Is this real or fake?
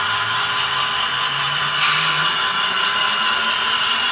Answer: real